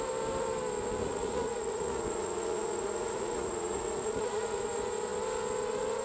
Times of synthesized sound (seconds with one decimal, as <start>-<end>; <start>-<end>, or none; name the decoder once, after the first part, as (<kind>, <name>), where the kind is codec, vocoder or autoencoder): 1.0-4.6 (vocoder, Vocos)